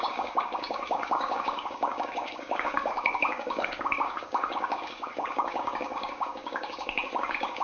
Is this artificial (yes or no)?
yes